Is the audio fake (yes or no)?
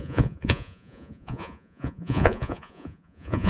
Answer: yes